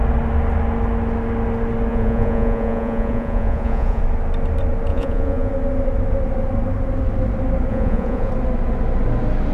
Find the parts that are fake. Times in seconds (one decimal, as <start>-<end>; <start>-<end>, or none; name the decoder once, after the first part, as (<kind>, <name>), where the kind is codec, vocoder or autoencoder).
1.9-4.0 (vocoder, Vocos); 4.9-5.5; 7.7-8.3